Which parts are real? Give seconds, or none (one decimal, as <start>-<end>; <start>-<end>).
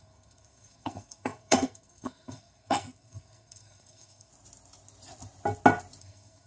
4.3-6.0